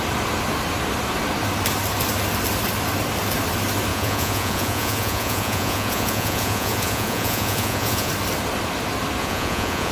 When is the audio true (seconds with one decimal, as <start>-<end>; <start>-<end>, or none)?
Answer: 0.0-3.9; 8.1-9.2